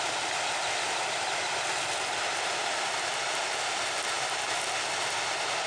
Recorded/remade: recorded